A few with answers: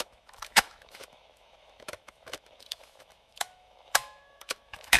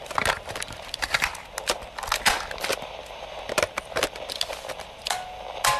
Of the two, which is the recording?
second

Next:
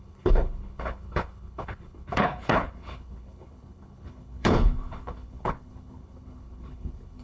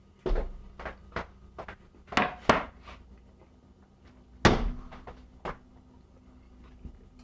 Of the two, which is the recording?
second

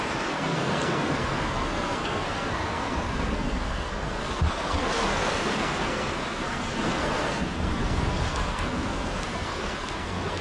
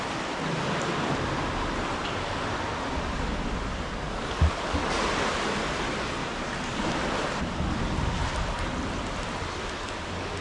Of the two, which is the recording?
second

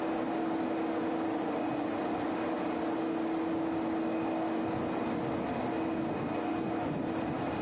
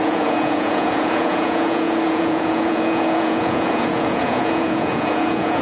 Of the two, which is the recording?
first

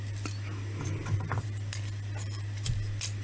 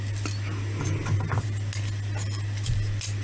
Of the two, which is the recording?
second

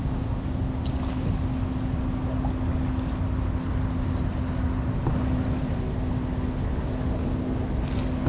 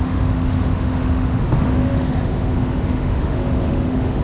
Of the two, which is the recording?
first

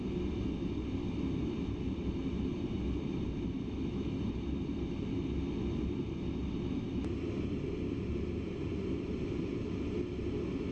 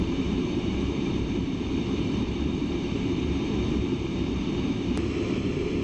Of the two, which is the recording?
first